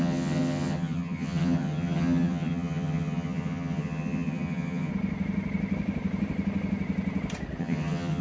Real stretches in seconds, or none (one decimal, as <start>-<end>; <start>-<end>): 4.9-7.6